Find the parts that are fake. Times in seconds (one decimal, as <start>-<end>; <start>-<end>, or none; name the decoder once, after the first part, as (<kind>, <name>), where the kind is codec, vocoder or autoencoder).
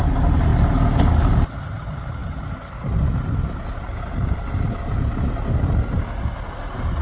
none